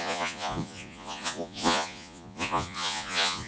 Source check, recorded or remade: remade